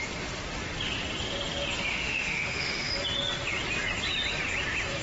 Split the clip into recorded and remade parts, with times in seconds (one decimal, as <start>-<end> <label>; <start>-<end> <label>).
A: 0.0-1.9 recorded; 1.9-2.9 remade; 2.9-5.0 recorded